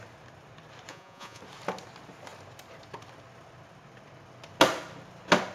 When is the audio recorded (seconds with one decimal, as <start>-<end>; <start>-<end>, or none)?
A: 0.0-0.9; 1.4-5.5